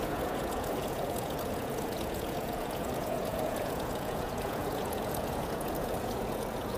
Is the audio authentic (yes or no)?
no